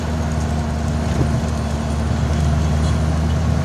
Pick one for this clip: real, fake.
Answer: real